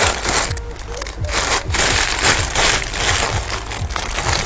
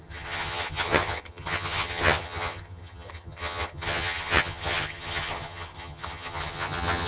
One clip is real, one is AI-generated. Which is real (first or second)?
first